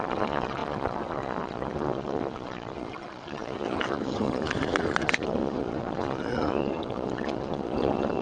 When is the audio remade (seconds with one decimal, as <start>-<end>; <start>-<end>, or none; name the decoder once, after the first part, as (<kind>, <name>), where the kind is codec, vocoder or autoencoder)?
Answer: 0.0-8.2 (vocoder, Vocos)